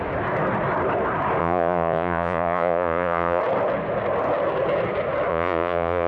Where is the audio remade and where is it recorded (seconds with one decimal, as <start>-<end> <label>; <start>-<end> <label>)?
0.0-1.4 recorded; 1.4-3.4 remade; 3.4-5.3 recorded; 5.3-6.1 remade